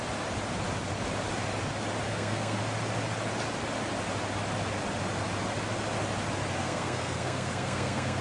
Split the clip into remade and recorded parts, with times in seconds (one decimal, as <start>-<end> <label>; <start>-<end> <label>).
0.0-2.1 recorded; 2.1-2.6 remade; 2.6-6.6 recorded; 6.6-8.2 remade